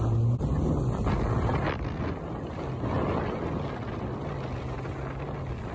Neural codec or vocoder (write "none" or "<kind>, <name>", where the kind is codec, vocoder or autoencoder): none